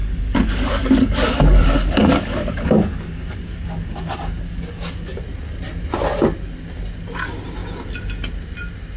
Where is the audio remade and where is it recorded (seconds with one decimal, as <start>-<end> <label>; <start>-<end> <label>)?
0.0-5.2 remade; 5.2-9.0 recorded

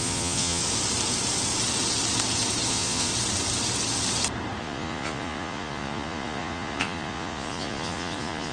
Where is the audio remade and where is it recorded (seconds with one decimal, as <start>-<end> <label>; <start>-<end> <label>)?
0.0-0.6 remade; 0.6-2.7 recorded; 2.7-3.1 remade; 3.1-4.6 recorded; 4.6-8.5 remade

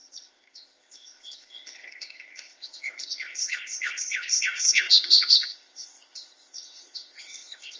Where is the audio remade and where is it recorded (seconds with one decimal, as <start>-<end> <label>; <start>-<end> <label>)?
0.0-7.8 remade

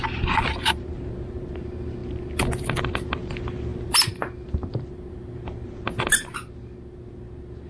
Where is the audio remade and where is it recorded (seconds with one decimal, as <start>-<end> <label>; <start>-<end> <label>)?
0.0-7.7 recorded

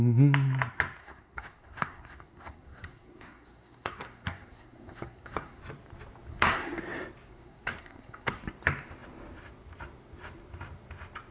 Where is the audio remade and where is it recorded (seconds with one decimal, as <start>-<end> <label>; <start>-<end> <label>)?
0.0-1.0 recorded; 1.0-5.6 remade; 5.6-6.3 recorded; 6.3-6.8 remade; 6.8-7.3 recorded; 7.3-8.4 remade; 8.4-11.3 recorded

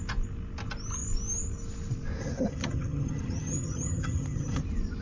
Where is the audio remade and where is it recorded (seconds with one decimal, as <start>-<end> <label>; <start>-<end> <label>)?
0.0-2.2 recorded; 2.2-4.6 remade; 4.6-5.0 recorded

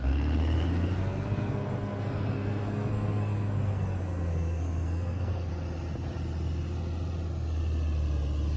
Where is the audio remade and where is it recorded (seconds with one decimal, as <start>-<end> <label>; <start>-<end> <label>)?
0.0-5.5 remade; 5.5-8.6 recorded